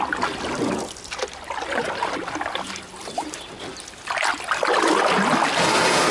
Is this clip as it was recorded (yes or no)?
yes